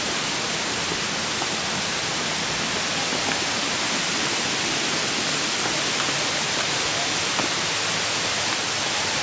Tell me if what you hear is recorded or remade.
recorded